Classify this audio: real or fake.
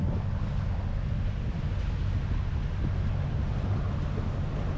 real